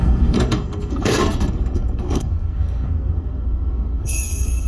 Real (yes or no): no